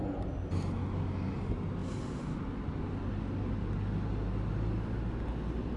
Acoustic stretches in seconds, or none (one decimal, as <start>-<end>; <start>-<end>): 0.0-5.8